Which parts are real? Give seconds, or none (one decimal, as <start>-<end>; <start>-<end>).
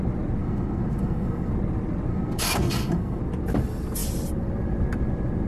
0.0-0.4; 1.5-2.1; 3.2-5.5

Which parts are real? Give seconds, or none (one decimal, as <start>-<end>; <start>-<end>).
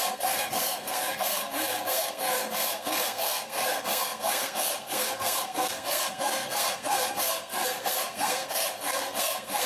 none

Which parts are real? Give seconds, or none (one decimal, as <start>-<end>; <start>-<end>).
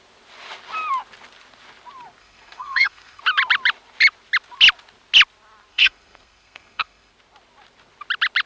0.0-2.2; 3.2-5.7; 7.1-8.5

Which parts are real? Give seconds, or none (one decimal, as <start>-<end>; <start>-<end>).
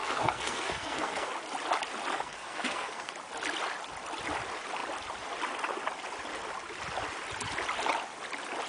1.3-2.1; 3.1-8.7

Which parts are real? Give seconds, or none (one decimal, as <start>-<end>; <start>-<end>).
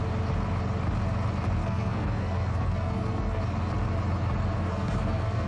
0.0-1.6; 3.4-4.7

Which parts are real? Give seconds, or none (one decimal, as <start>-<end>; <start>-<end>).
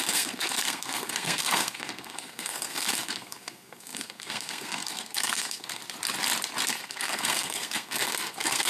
5.8-6.7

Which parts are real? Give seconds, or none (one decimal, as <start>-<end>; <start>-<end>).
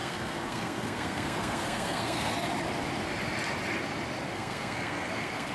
2.3-4.3